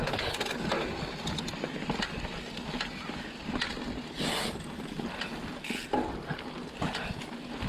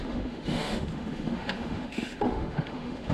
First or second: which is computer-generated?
second